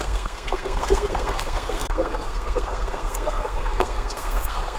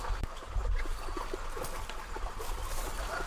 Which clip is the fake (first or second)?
first